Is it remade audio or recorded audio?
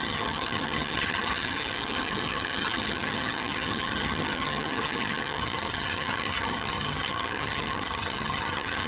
remade